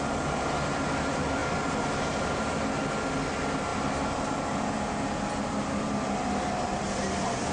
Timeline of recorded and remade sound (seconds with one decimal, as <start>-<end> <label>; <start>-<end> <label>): 0.0-7.5 recorded